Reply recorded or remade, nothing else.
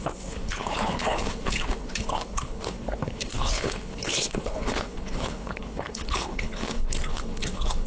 remade